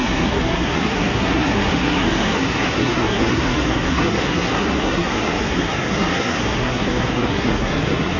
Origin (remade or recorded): remade